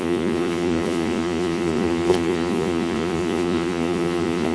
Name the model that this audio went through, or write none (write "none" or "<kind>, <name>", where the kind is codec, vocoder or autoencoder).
vocoder, Vocos